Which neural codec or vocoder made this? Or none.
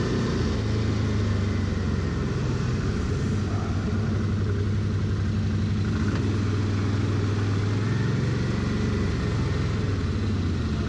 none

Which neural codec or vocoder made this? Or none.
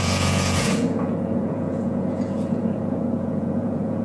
vocoder, Vocos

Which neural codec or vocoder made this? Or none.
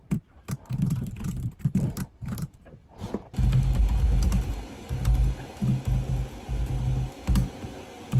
none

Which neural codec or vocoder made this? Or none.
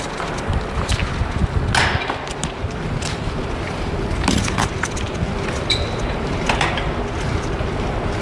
none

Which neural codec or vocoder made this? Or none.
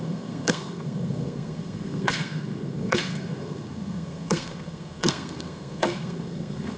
codec, SNAC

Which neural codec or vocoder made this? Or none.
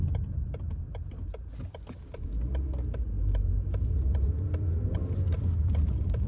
none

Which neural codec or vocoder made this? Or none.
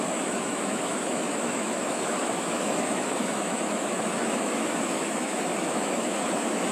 autoencoder, DAC-VAE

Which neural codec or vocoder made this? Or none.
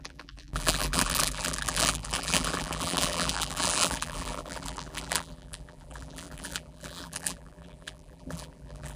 vocoder, BigVGAN v2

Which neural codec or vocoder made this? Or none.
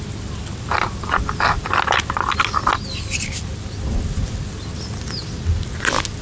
none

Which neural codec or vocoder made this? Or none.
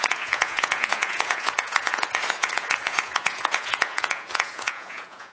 vocoder, Vocos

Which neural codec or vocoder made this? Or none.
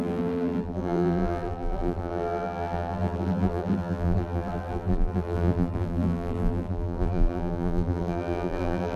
vocoder, BigVGAN v2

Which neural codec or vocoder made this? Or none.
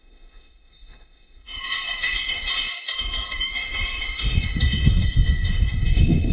autoencoder, DAC-VAE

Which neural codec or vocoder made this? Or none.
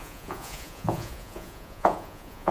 vocoder, Vocos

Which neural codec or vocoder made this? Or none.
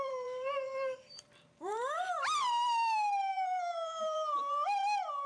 vocoder, BigVGAN v2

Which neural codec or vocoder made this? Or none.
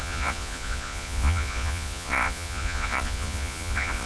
vocoder, Vocos